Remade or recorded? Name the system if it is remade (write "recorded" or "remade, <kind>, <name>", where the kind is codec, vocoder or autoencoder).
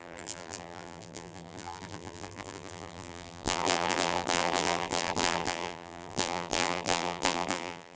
remade, vocoder, BigVGAN v2